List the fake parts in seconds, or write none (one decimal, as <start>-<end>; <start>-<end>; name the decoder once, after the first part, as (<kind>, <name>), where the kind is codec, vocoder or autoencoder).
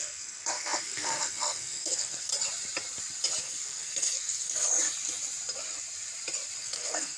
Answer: 0.0-2.3 (codec, SNAC); 3.4-4.7; 6.6-7.2